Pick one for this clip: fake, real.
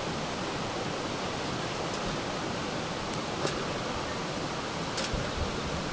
real